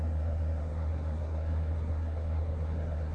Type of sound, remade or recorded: remade